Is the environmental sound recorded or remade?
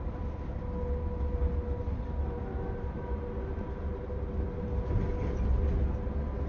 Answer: recorded